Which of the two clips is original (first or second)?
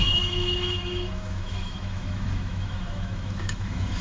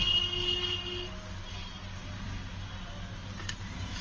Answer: second